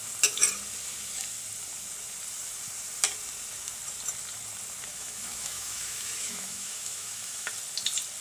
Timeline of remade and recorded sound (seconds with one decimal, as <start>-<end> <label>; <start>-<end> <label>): 0.0-4.9 recorded; 4.9-7.5 remade; 7.5-8.2 recorded